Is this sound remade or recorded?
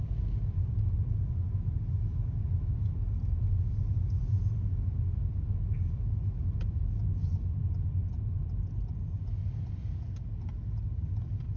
recorded